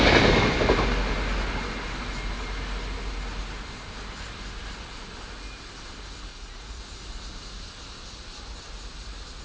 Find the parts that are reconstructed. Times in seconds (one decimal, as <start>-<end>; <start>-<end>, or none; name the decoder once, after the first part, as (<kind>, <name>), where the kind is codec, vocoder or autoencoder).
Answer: 6.3-6.8 (vocoder, Vocos)